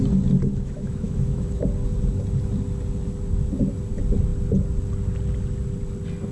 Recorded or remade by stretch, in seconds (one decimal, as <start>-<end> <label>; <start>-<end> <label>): 0.0-0.5 recorded; 0.5-1.6 remade; 1.6-6.3 recorded